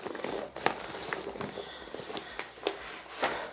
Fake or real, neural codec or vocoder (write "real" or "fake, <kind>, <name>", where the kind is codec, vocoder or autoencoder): real